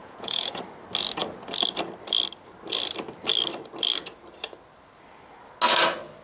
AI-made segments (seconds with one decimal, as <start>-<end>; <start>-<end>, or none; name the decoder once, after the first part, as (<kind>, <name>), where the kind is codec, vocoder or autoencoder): 0.0-0.6 (vocoder, Vocos)